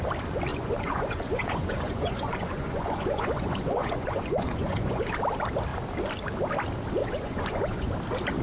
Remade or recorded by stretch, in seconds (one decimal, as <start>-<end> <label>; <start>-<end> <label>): 0.0-0.5 recorded; 0.5-5.1 remade; 5.1-7.0 recorded; 7.0-7.9 remade; 7.9-8.4 recorded